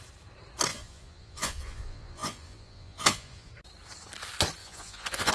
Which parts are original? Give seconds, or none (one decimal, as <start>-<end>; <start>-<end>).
0.0-0.7; 3.5-4.6